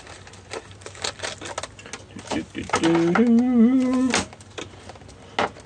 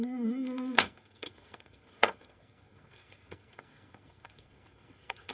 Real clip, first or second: first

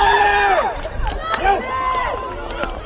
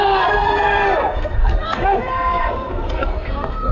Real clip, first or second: first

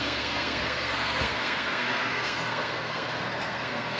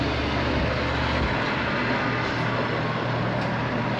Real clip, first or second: second